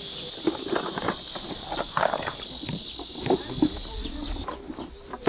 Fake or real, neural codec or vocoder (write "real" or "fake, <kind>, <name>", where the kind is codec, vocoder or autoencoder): real